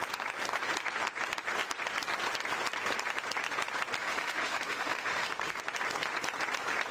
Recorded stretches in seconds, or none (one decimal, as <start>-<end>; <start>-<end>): 0.0-4.0; 5.6-6.9